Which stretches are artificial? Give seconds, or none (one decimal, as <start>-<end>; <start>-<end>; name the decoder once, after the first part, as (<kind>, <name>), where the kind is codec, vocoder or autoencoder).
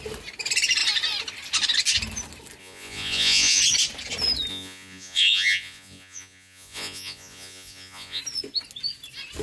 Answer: 2.6-3.6 (vocoder, Vocos); 4.5-8.2